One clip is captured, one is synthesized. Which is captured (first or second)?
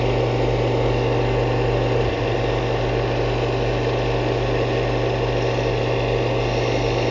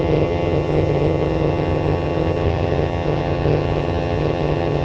first